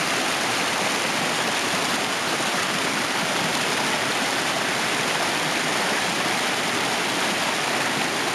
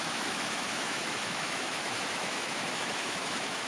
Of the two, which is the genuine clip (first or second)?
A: first